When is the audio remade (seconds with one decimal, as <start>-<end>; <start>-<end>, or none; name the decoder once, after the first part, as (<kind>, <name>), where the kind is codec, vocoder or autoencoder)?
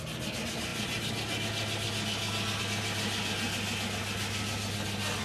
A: none